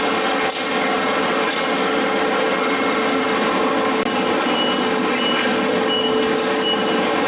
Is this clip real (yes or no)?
yes